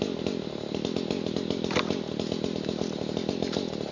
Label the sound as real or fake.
real